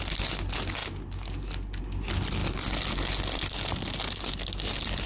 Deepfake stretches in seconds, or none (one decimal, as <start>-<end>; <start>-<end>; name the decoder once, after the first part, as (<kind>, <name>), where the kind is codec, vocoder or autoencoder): none